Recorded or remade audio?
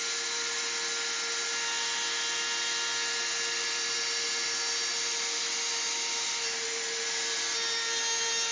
recorded